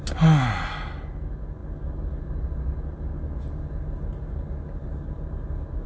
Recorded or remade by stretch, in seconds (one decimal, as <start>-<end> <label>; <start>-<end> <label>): 0.0-5.9 recorded